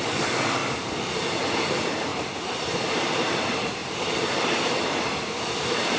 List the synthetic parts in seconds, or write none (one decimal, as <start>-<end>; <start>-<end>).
none